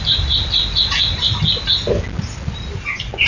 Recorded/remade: recorded